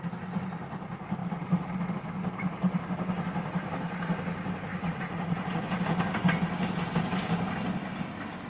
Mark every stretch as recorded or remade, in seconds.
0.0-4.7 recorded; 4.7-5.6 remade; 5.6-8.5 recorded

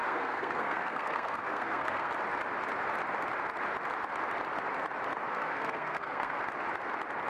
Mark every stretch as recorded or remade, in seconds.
0.0-2.1 remade; 2.1-5.3 recorded; 5.3-6.4 remade; 6.4-7.3 recorded

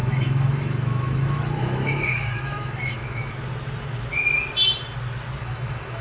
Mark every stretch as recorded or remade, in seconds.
0.0-3.3 remade; 3.3-5.4 recorded; 5.4-6.0 remade

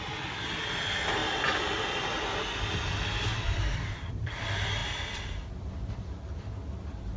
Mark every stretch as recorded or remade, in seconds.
0.0-1.2 recorded; 1.2-4.3 remade; 4.3-4.8 recorded; 4.8-5.5 remade; 5.5-7.2 recorded

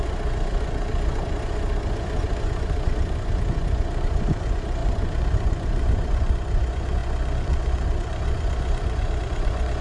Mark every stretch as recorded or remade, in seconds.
0.0-9.8 remade

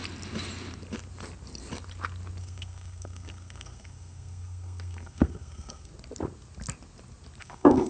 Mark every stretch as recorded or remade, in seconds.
0.0-2.4 recorded; 2.4-5.9 remade; 5.9-7.4 recorded; 7.4-7.9 remade